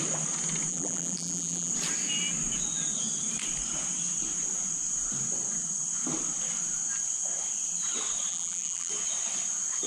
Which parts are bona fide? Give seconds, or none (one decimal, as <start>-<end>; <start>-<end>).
0.0-0.7; 1.7-8.3; 8.9-9.9